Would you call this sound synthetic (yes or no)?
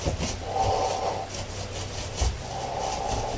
no